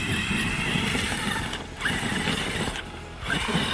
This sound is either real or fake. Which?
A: real